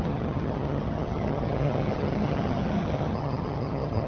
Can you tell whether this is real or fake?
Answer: fake